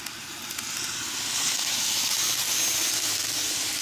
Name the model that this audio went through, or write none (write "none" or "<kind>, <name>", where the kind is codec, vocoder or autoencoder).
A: none